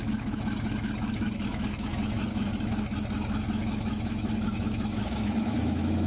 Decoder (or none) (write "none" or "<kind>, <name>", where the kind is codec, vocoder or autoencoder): autoencoder, DAC-VAE